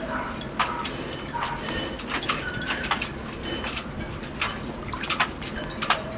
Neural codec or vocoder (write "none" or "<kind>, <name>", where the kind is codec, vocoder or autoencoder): none